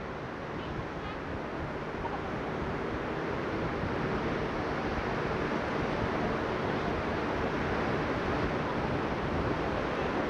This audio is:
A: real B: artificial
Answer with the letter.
A